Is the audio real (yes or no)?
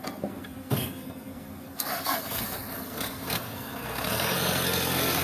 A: no